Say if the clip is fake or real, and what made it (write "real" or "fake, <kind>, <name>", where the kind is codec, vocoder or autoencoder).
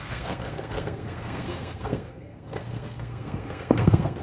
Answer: fake, codec, SNAC